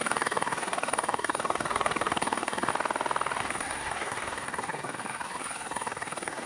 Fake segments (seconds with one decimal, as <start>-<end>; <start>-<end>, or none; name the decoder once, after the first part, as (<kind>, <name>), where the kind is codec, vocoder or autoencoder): 0.0-2.7 (codec, SNAC); 3.4-6.5

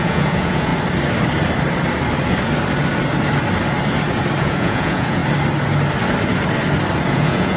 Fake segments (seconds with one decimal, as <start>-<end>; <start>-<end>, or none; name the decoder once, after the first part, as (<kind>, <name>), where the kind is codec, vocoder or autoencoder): 0.0-0.7 (vocoder, Vocos); 4.4-5.2; 7.1-7.6

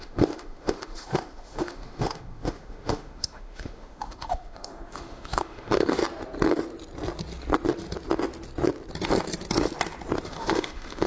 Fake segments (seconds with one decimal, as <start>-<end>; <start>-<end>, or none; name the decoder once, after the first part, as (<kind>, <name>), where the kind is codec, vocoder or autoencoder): 0.0-6.0 (autoencoder, DAC-VAE); 10.3-11.1

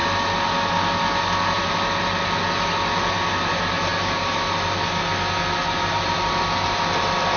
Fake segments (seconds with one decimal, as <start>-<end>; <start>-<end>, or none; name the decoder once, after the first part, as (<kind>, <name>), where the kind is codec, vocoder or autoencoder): none

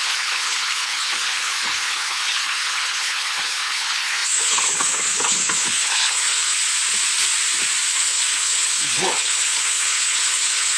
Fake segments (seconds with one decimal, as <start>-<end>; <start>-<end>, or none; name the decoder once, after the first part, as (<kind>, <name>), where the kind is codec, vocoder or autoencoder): 0.0-6.6 (codec, HILCodec); 7.9-10.8

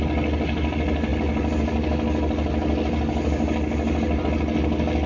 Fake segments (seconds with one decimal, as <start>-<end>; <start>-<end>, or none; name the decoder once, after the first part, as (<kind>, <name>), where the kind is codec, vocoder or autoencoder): none

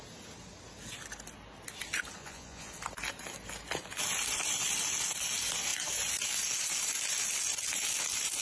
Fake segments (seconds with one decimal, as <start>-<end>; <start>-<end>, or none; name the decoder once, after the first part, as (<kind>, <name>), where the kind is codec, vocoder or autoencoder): 2.2-2.7 (vocoder, Vocos)